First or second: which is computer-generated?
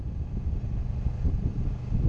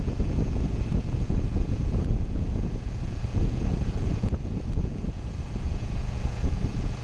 second